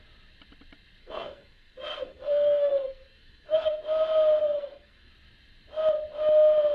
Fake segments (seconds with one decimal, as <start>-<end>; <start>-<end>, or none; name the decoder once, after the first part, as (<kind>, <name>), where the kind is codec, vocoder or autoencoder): 1.0-3.8 (codec, SNAC); 4.4-5.1